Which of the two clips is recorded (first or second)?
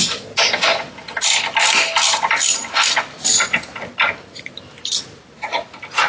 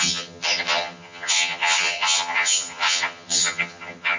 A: first